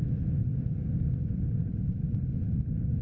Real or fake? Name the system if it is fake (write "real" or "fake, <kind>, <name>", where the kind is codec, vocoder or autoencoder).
real